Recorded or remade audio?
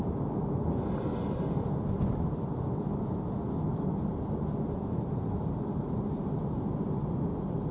recorded